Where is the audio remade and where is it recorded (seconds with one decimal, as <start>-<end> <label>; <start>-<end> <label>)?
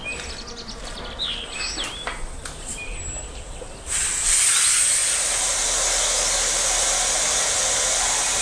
0.0-8.4 recorded